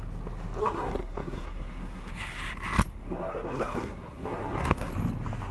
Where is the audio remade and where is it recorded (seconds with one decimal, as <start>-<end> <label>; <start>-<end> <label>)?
0.0-0.6 recorded; 0.6-2.4 remade; 2.4-2.9 recorded; 2.9-4.9 remade; 4.9-5.5 recorded